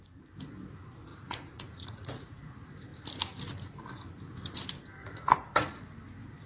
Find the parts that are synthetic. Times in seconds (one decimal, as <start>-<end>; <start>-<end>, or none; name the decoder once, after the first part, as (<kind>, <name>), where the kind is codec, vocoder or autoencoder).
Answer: 1.1-2.5 (vocoder, Vocos); 5.0-5.8